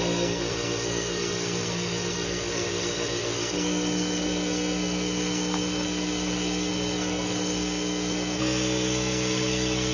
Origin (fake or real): fake